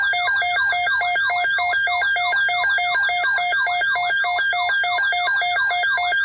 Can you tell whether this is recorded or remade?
recorded